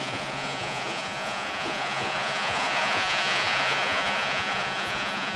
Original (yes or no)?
no